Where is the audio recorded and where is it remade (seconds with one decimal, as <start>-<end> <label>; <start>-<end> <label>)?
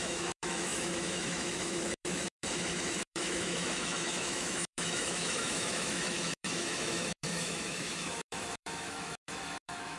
0.0-10.0 remade